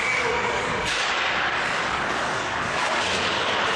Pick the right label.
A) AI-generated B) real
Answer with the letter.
A